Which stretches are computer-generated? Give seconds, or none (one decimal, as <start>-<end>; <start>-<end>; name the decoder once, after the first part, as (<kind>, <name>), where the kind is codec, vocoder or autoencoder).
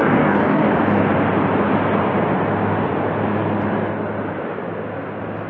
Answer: 0.0-0.7 (codec, DAC)